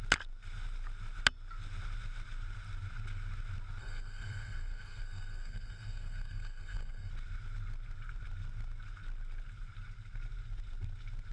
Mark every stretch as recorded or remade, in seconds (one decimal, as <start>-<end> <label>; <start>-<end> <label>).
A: 0.0-3.8 recorded; 3.8-7.1 remade; 7.1-11.3 recorded